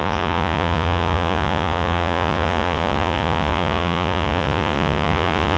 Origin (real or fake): fake